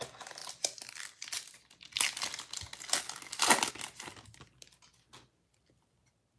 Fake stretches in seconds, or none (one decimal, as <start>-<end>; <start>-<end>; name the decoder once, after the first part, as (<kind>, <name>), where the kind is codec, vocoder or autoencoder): none

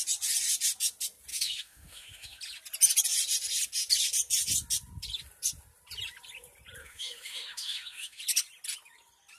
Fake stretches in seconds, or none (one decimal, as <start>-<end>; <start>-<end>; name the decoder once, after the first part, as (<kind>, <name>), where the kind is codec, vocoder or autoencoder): 1.3-2.4 (autoencoder, DAC-VAE); 6.8-8.2

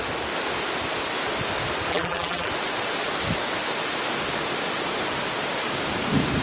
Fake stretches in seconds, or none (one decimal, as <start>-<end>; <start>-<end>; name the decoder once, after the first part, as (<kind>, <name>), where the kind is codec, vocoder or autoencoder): 1.9-2.5 (vocoder, BigVGAN v2)

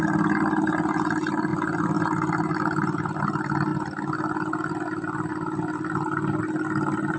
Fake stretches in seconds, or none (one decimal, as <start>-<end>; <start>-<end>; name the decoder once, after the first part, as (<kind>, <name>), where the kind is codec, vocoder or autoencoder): none

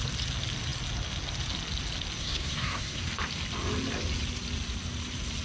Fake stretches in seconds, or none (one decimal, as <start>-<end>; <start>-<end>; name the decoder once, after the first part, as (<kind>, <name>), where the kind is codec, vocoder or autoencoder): 2.2-3.0 (codec, SNAC)

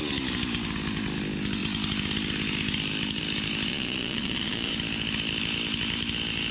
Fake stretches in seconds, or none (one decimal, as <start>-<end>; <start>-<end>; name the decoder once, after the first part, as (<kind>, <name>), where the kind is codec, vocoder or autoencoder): 3.7-4.7 (vocoder, Vocos)

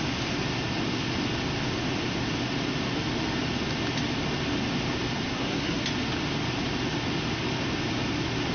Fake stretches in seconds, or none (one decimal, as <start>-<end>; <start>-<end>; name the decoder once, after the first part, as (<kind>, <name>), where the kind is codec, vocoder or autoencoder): 5.3-5.8 (codec, SNAC)